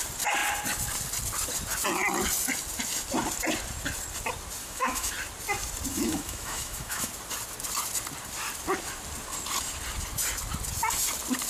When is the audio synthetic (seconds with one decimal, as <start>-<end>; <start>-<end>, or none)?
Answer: 4.6-5.1; 5.9-7.1